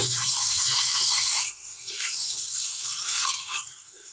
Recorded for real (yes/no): no